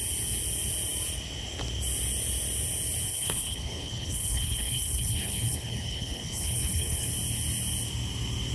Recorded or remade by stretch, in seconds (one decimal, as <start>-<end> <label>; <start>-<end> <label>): 0.0-3.1 recorded; 3.1-7.1 remade; 7.1-8.5 recorded

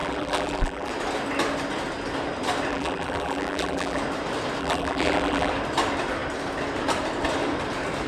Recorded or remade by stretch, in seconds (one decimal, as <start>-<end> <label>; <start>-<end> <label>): 0.0-0.9 remade; 0.9-2.7 recorded; 2.7-4.0 remade; 4.0-4.6 recorded; 4.6-5.5 remade; 5.5-8.1 recorded

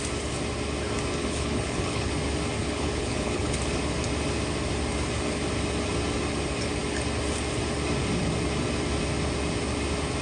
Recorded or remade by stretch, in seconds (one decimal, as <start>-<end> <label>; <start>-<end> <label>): 0.0-1.2 recorded; 1.2-2.1 remade; 2.1-2.6 recorded; 2.6-3.6 remade; 3.6-10.2 recorded

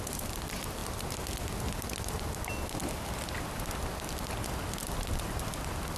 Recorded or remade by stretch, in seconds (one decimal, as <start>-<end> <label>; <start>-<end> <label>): 0.0-6.0 recorded

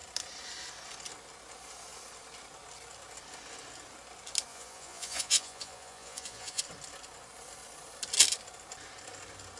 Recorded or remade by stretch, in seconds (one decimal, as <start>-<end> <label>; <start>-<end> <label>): 0.0-4.5 recorded; 4.5-6.6 remade; 6.6-9.6 recorded